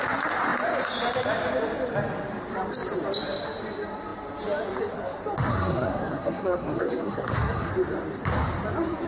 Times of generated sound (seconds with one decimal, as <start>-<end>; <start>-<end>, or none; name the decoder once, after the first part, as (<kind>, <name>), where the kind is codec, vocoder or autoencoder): 5.5-7.7 (codec, SNAC)